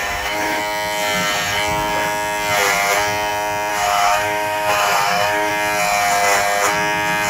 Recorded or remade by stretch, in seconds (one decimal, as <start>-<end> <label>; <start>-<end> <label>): 0.0-0.6 remade; 0.6-3.7 recorded; 3.7-5.5 remade; 5.5-7.3 recorded